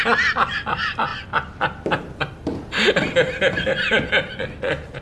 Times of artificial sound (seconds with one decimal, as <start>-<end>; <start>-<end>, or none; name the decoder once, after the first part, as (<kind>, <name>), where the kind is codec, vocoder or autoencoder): none